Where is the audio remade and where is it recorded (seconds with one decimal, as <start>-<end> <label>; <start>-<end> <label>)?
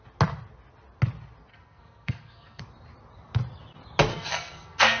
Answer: 0.0-1.5 recorded; 1.5-2.6 remade; 2.6-4.1 recorded; 4.1-5.0 remade